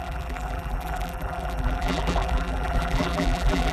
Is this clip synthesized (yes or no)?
yes